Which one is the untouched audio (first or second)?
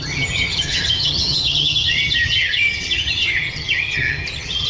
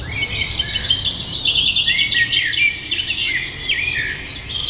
second